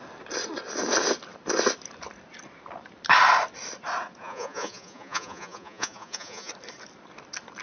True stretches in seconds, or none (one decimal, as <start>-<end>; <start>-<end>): 0.0-4.2; 6.5-7.6